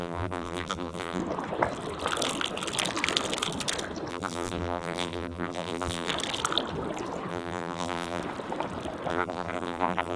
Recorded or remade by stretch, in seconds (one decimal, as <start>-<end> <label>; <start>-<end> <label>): 0.0-1.2 remade; 1.2-4.1 recorded; 4.1-6.1 remade; 6.1-7.3 recorded; 7.3-8.2 remade; 8.2-9.1 recorded; 9.1-10.2 remade